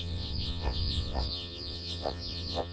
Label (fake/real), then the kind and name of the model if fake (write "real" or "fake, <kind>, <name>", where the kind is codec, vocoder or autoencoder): fake, vocoder, WaveNeXt